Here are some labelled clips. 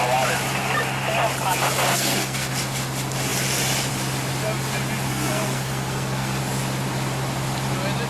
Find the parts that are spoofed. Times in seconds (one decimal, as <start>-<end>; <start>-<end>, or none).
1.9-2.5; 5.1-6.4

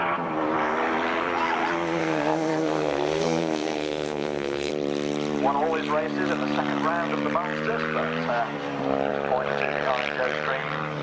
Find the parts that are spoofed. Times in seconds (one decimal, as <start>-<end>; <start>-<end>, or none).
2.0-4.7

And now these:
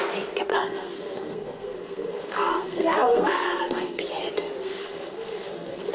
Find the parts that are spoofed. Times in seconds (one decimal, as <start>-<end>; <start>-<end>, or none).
0.5-4.0; 4.6-5.9

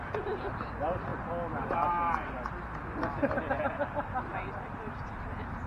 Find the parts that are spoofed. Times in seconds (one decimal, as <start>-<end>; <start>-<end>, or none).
none

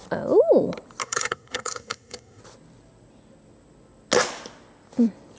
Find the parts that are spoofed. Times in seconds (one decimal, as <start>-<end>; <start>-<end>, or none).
1.0-2.4

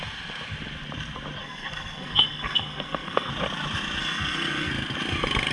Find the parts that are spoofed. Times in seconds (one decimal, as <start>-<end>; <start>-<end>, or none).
1.4-3.3; 4.0-4.7

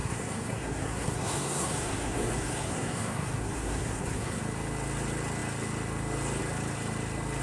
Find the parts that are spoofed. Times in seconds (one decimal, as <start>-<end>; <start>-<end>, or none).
0.0-4.4